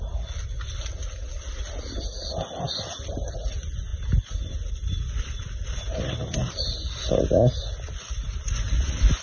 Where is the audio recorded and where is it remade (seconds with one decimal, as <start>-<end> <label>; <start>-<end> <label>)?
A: 0.0-9.2 recorded